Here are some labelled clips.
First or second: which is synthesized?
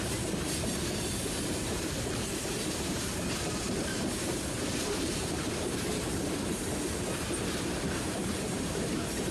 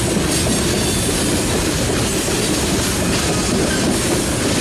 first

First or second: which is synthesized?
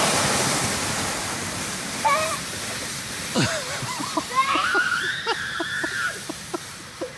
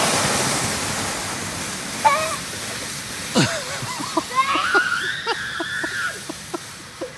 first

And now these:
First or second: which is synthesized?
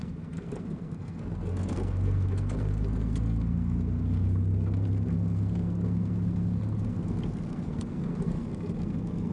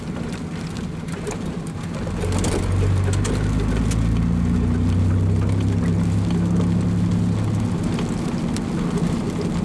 first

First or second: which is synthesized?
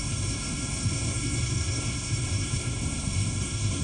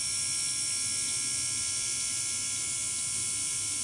first